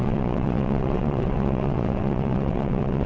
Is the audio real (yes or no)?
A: no